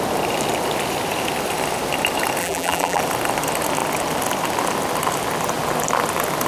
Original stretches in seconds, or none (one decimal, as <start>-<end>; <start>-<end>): 0.0-2.4; 3.0-6.5